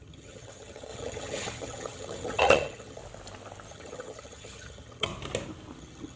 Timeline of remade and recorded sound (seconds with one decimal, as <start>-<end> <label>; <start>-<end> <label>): 0.0-3.0 remade; 3.0-3.7 recorded; 3.7-5.1 remade; 5.1-5.8 recorded; 5.8-6.2 remade